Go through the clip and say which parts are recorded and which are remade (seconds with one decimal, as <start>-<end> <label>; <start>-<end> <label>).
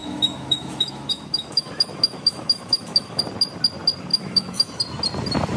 0.0-3.2 remade; 3.2-4.1 recorded; 4.1-4.8 remade; 4.8-5.6 recorded